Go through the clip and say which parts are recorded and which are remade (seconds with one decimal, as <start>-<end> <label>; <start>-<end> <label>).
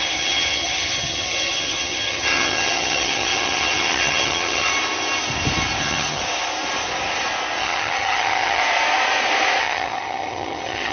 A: 0.0-4.7 remade; 4.7-5.8 recorded; 5.8-6.2 remade; 6.2-7.6 recorded; 7.6-8.6 remade; 8.6-9.6 recorded; 9.6-10.9 remade